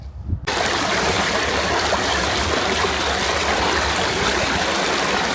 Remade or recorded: recorded